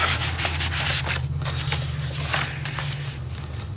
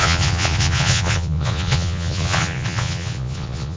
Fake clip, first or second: second